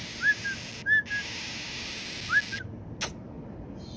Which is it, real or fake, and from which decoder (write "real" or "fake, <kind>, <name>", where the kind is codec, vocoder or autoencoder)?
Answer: real